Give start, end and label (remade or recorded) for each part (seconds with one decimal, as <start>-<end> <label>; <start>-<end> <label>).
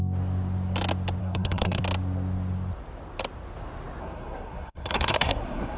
0.0-1.2 recorded; 1.2-1.8 remade; 1.8-4.0 recorded; 4.0-5.8 remade